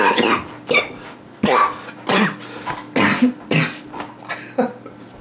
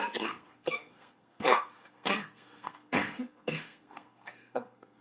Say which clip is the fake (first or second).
second